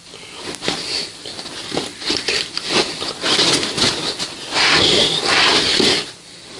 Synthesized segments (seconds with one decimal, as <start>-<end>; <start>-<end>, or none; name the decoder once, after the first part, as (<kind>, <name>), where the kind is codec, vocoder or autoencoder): 1.9-2.5 (vocoder, BigVGAN v2); 5.5-6.6